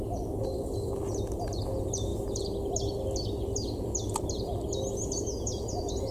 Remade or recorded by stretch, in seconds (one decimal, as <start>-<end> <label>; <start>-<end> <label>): 0.0-6.1 recorded